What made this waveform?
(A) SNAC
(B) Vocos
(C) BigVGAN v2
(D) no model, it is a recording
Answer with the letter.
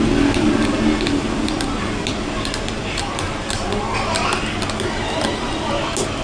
D